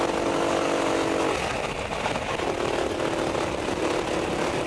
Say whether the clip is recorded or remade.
recorded